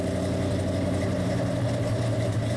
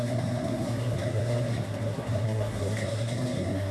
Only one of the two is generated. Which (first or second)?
second